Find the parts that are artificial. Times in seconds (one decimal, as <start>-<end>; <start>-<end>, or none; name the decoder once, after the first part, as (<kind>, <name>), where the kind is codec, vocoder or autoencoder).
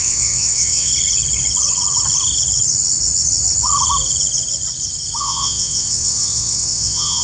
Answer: 0.0-0.9 (vocoder, WaveNeXt); 5.2-7.2